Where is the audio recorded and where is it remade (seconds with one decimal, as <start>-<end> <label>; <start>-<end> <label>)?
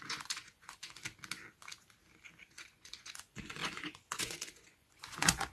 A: 0.0-1.0 remade; 1.0-2.5 recorded; 2.5-5.5 remade